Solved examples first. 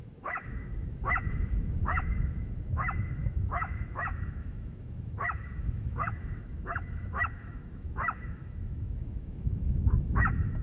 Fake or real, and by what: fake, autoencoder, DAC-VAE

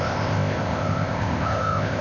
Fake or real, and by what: fake, codec, ZipCodec